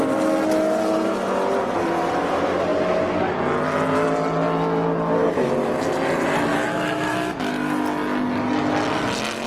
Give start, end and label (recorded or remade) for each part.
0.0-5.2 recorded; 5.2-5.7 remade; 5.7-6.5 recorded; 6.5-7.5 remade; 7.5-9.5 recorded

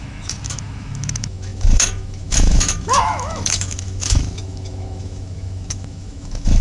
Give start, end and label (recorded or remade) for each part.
0.0-6.6 remade

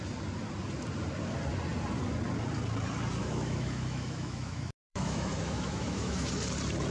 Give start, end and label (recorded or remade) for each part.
0.0-3.2 recorded; 3.2-6.3 remade; 6.3-6.9 recorded

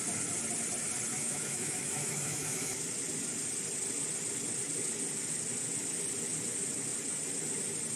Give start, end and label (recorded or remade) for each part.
0.0-1.2 recorded; 1.2-2.7 remade; 2.7-8.0 recorded

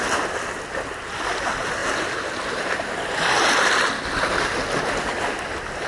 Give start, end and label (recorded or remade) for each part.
0.0-5.9 recorded

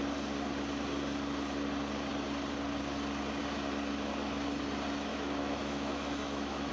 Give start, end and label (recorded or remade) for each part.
0.0-5.1 recorded; 5.1-6.7 remade

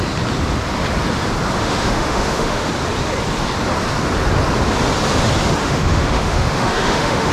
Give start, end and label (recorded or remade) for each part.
0.0-1.6 recorded; 1.6-2.7 remade; 2.7-5.6 recorded; 5.6-7.3 remade